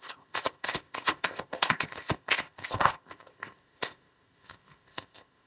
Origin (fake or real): fake